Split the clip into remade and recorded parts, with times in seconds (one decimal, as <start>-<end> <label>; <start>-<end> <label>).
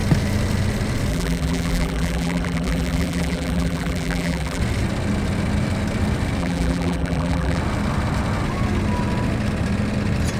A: 0.0-1.1 recorded; 1.1-4.6 remade; 4.6-6.4 recorded; 6.4-7.6 remade; 7.6-10.4 recorded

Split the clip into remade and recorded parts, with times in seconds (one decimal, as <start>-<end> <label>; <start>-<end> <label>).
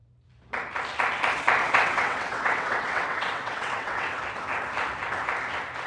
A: 0.0-1.6 recorded; 1.6-4.2 remade; 4.2-5.9 recorded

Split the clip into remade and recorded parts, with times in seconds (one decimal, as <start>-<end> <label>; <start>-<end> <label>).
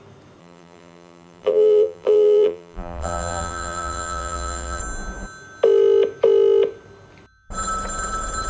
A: 0.0-0.4 recorded; 0.4-4.8 remade; 4.8-8.5 recorded